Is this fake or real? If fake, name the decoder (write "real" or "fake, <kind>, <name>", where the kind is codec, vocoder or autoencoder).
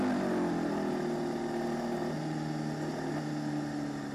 real